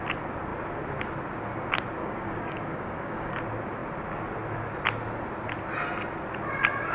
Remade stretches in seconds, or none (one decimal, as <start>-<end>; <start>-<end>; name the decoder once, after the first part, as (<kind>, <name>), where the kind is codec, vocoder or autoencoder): 2.0-3.4 (codec, DAC)